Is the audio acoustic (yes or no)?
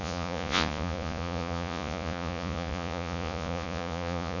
no